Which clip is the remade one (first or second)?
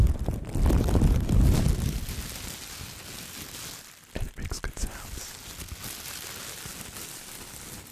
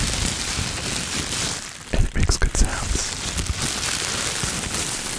second